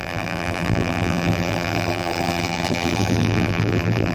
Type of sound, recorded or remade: remade